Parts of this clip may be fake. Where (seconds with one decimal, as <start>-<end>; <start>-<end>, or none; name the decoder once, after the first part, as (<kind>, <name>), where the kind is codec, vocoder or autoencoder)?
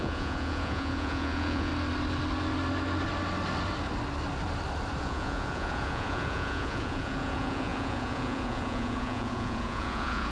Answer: 0.0-1.7 (vocoder, Vocos); 5.0-10.3